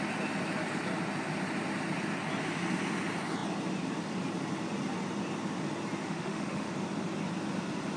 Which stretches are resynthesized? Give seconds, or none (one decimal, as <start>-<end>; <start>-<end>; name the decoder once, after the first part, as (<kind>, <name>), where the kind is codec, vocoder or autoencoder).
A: 6.0-6.7 (autoencoder, DAC-VAE)